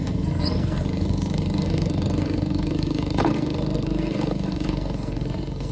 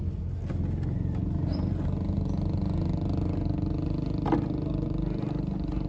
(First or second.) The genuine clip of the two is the second